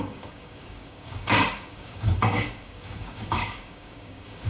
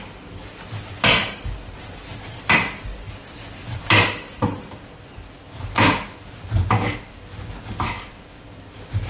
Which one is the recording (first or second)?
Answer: second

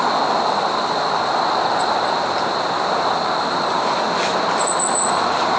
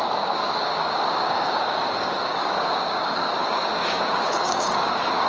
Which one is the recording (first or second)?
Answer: first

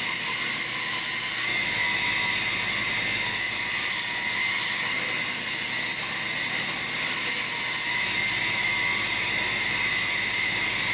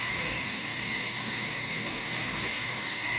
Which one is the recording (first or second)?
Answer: first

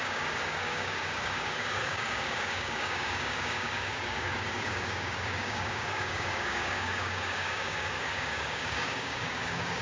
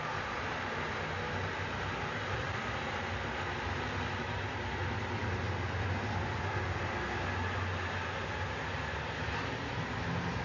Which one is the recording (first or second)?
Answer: second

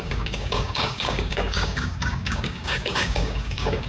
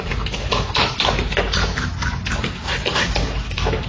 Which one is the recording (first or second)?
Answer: second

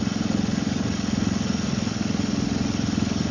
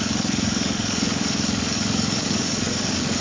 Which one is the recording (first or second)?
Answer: first